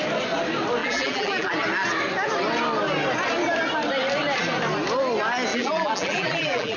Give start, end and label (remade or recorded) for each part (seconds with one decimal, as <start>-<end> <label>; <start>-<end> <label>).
0.0-0.8 recorded; 0.8-1.5 remade; 1.5-5.5 recorded; 5.5-6.8 remade